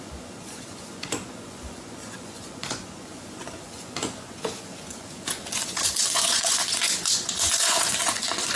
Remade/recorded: remade